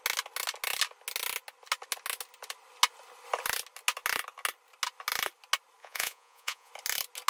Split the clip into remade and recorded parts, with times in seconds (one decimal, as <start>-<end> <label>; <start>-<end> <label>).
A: 0.0-5.8 recorded; 5.8-6.7 remade; 6.7-7.3 recorded